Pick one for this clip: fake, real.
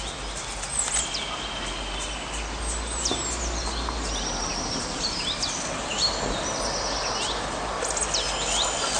real